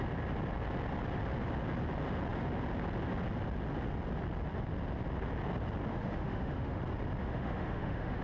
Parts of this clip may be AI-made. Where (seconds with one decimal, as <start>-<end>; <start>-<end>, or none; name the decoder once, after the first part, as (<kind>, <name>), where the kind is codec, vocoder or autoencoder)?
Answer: 5.9-6.8 (autoencoder, DAC-VAE); 7.2-8.2